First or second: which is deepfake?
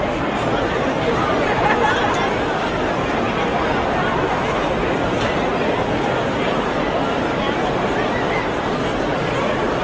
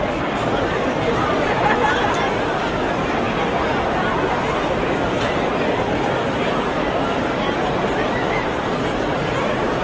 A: second